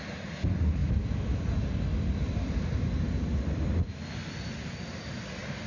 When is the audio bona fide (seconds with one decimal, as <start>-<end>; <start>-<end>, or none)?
0.0-0.8; 1.4-5.7